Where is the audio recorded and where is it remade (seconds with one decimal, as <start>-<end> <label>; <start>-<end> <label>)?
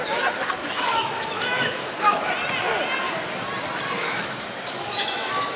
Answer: 0.0-0.6 recorded; 0.6-2.3 remade; 2.3-4.0 recorded; 4.0-5.6 remade